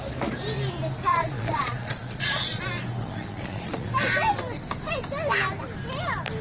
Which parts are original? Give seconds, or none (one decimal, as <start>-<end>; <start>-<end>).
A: 0.0-1.1; 2.6-3.0; 3.9-6.4